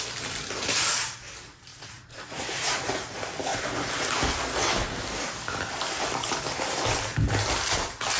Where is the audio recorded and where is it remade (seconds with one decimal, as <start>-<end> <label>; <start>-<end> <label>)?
0.0-1.7 recorded; 1.7-3.1 remade; 3.1-8.2 recorded